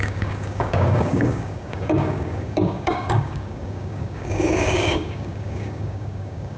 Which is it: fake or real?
fake